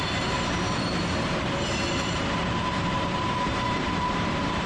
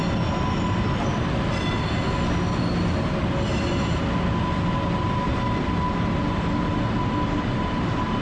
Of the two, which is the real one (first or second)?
second